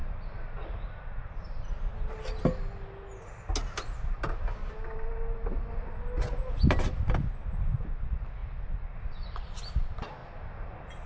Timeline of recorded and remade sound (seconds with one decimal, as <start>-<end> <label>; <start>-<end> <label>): 0.0-4.6 recorded; 4.6-5.7 remade; 5.7-11.1 recorded